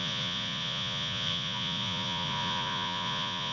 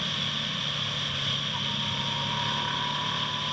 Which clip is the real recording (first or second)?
second